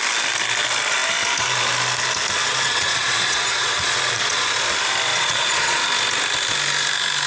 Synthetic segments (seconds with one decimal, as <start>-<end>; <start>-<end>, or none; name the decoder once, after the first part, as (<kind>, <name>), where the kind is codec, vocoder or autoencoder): 2.4-4.6 (vocoder, Vocos); 5.1-5.8